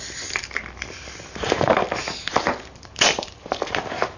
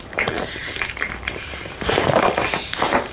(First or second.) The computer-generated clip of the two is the second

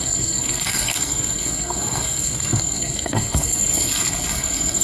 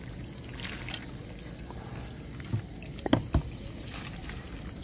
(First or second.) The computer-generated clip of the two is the first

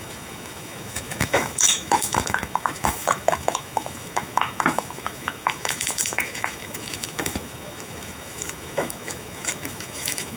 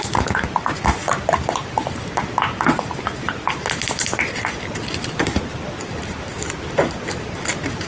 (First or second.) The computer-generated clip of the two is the first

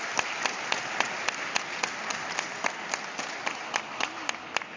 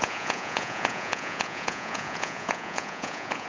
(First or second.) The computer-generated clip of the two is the second